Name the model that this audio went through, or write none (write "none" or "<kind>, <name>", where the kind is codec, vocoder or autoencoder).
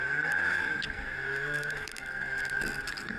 codec, SNAC